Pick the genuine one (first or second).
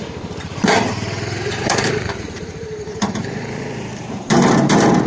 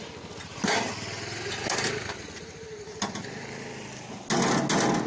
second